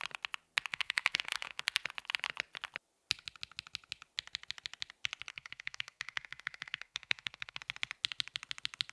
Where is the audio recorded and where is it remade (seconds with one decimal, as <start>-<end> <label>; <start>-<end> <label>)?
0.0-0.7 recorded; 0.7-1.6 remade; 1.6-5.3 recorded; 5.3-7.6 remade; 7.6-8.9 recorded